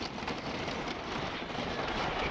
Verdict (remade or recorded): recorded